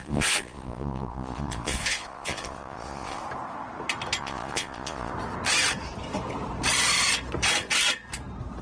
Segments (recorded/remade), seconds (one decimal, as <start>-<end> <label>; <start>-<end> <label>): 0.0-3.2 remade; 3.2-4.2 recorded; 4.2-5.1 remade; 5.1-8.6 recorded